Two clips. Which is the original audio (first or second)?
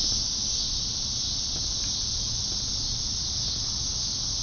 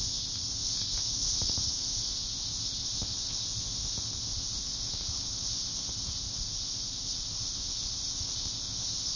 first